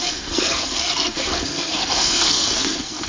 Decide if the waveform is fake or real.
fake